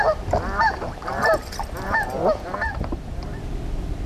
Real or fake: fake